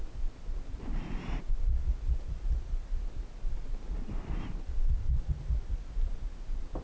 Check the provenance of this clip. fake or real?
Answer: real